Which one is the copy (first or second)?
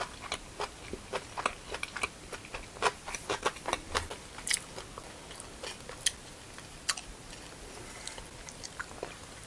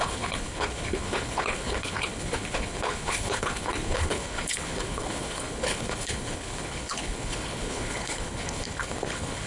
second